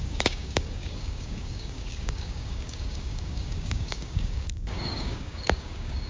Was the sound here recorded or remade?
remade